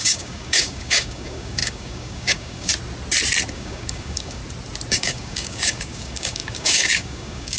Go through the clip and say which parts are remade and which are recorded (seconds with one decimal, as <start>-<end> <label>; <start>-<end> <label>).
0.0-2.7 remade; 2.7-3.5 recorded; 3.5-4.4 remade; 4.4-4.9 recorded; 4.9-7.6 remade